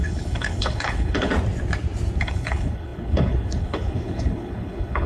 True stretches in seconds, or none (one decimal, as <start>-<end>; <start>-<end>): 1.3-2.2